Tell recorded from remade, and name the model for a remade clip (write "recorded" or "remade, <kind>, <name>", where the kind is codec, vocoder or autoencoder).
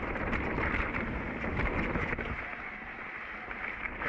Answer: recorded